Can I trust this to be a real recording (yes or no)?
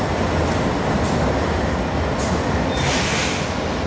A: yes